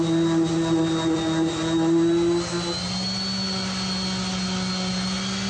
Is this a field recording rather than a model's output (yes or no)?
yes